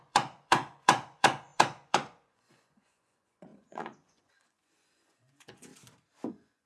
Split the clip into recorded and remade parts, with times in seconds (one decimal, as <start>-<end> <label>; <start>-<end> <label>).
0.0-5.7 remade; 5.7-6.3 recorded; 6.3-6.7 remade